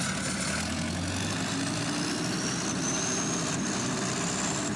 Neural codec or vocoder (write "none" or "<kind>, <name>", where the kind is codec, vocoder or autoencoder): none